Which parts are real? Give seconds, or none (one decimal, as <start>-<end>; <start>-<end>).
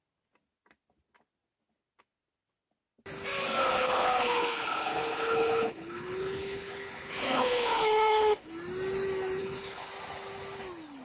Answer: 0.0-3.6; 8.5-9.4; 9.9-11.0